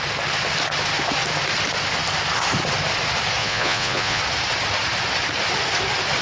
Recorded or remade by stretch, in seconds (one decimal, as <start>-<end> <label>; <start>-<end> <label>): 0.0-3.4 recorded; 3.4-4.2 remade; 4.2-6.2 recorded

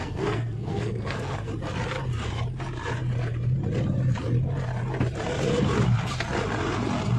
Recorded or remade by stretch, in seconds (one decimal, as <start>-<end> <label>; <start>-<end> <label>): 0.0-1.5 remade; 1.5-7.2 recorded

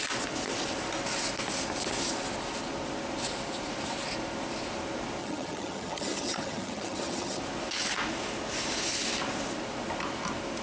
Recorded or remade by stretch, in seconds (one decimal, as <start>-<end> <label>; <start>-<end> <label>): 0.0-5.2 recorded; 5.2-7.4 remade; 7.4-10.6 recorded

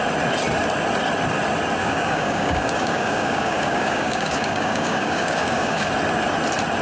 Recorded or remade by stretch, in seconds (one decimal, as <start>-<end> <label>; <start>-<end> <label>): 0.0-1.8 recorded; 1.8-5.9 remade; 5.9-6.8 recorded

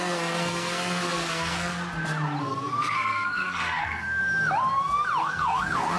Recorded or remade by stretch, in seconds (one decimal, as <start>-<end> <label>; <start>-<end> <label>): 0.0-1.7 remade; 1.7-2.4 recorded; 2.4-4.2 remade; 4.2-5.2 recorded; 5.2-6.0 remade

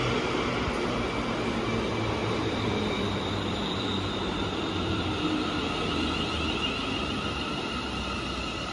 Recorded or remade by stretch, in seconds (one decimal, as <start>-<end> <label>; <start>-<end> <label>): 0.0-2.2 recorded; 2.2-5.3 remade; 5.3-8.7 recorded

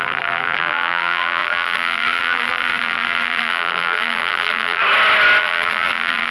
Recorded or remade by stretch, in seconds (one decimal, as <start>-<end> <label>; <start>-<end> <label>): 0.0-4.8 remade; 4.8-5.4 recorded; 5.4-6.3 remade

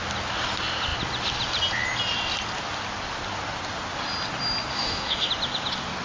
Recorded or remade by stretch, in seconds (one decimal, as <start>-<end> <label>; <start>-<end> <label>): 0.0-4.7 recorded; 4.7-5.3 remade; 5.3-6.0 recorded